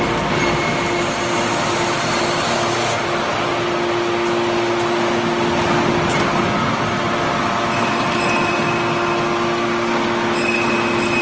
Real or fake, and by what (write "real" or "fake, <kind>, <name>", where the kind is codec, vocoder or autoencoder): real